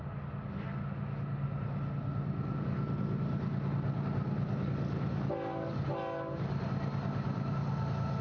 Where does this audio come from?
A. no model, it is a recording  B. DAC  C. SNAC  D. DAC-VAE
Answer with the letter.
A